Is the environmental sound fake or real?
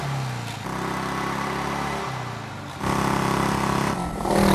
real